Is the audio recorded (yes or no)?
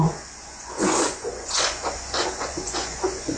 no